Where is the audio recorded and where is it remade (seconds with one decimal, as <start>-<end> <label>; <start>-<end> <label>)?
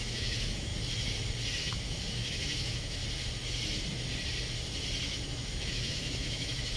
0.0-0.7 remade; 0.7-1.6 recorded; 1.6-3.0 remade; 3.0-5.6 recorded; 5.6-6.8 remade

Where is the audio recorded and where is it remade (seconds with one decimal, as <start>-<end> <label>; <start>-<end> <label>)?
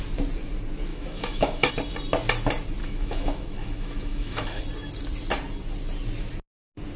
0.0-0.9 recorded; 0.9-1.7 remade; 1.7-2.8 recorded; 2.8-4.6 remade; 4.6-7.0 recorded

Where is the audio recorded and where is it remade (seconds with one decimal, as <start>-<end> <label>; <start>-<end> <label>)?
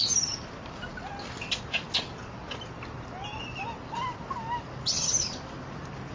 0.0-6.1 recorded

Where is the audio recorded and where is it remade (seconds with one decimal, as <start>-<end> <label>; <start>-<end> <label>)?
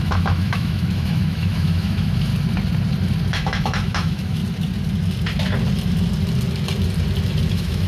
0.0-2.3 remade; 2.3-3.3 recorded; 3.3-4.4 remade; 4.4-7.5 recorded; 7.5-7.9 remade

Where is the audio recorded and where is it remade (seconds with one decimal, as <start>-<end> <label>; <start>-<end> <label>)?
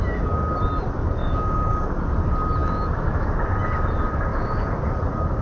0.0-1.2 recorded; 1.2-1.7 remade; 1.7-2.6 recorded; 2.6-3.3 remade; 3.3-4.3 recorded; 4.3-4.8 remade; 4.8-5.4 recorded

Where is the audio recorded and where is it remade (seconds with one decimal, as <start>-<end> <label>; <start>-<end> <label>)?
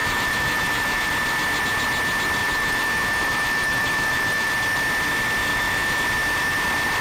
0.0-1.1 remade; 1.1-2.4 recorded; 2.4-4.5 remade; 4.5-5.5 recorded; 5.5-6.0 remade; 6.0-7.0 recorded